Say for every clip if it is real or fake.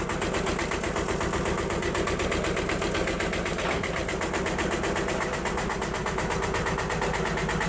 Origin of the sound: real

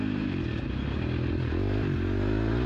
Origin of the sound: real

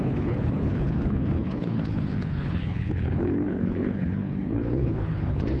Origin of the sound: fake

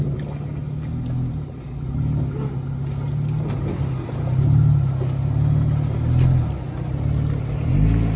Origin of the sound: real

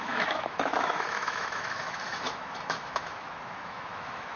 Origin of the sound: fake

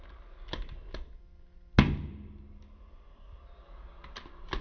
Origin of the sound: real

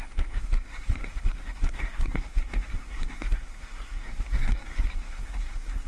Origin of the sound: fake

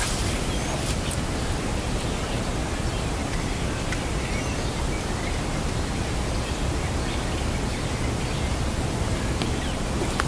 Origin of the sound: real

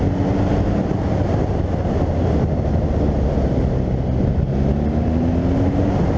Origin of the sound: real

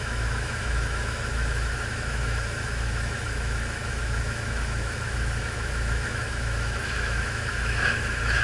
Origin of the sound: fake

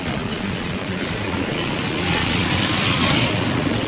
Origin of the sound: fake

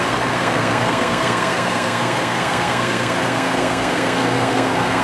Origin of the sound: fake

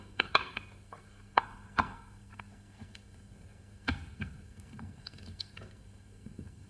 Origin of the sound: fake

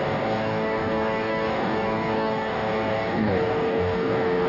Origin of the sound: fake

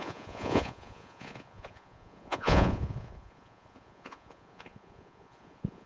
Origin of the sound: fake